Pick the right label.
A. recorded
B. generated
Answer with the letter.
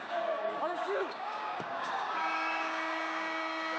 B